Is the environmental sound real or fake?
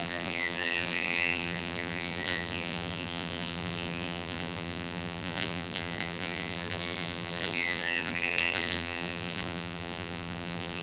fake